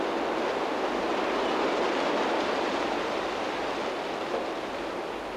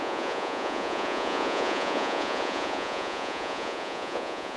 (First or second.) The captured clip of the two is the first